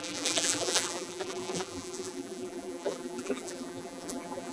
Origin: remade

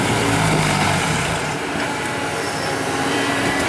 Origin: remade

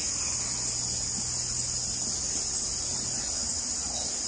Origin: recorded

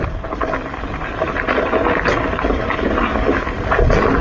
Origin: recorded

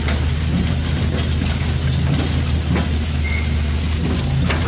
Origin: recorded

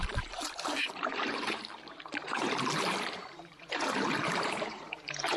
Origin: remade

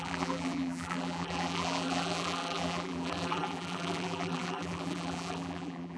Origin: remade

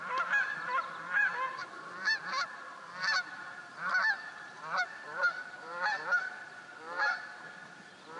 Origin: remade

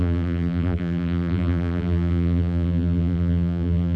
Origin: remade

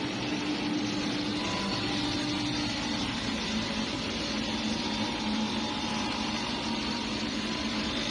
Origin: recorded